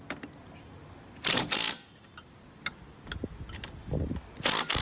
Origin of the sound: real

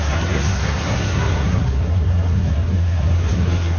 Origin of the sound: fake